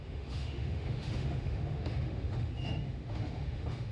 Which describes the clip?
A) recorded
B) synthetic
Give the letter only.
B